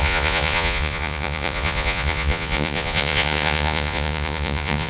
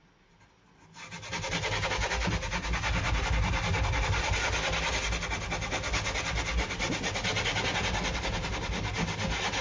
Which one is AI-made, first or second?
first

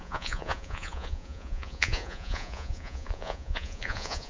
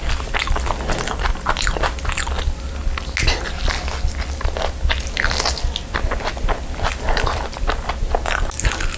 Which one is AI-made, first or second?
first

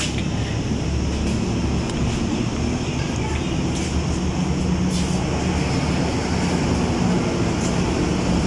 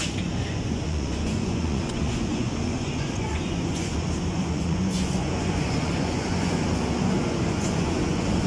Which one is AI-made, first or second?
second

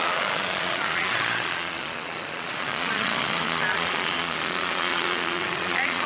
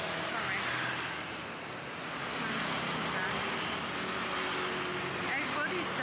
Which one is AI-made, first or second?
first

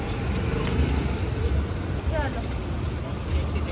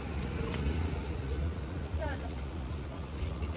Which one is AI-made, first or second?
second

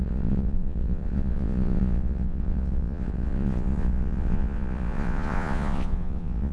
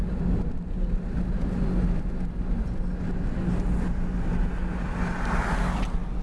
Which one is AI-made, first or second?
first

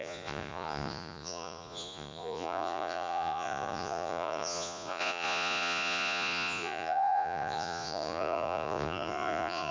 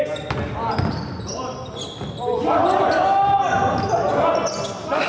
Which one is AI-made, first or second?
first